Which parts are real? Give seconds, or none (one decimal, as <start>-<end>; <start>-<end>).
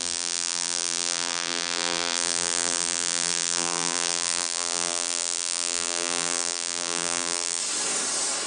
7.6-8.5